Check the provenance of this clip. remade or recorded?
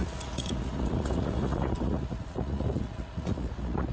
remade